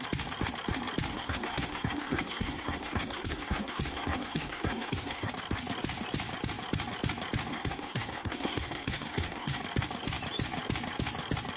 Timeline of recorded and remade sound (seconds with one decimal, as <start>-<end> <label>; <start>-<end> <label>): 0.0-1.1 recorded; 1.1-5.3 remade; 5.3-7.5 recorded; 7.5-9.6 remade; 9.6-11.6 recorded